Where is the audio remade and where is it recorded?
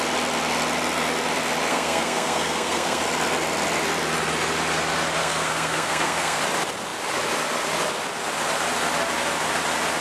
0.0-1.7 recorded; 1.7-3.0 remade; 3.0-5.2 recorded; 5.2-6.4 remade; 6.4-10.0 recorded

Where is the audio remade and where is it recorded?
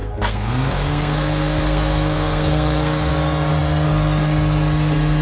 0.0-3.1 remade; 3.1-5.2 recorded